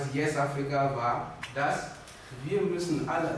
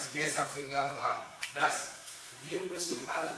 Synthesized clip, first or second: second